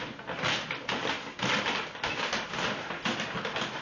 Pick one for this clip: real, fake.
real